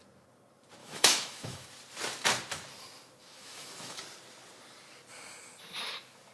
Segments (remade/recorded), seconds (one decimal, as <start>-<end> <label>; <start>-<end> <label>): 0.0-0.8 recorded; 0.8-1.7 remade; 1.7-3.2 recorded; 3.2-4.0 remade; 4.0-6.3 recorded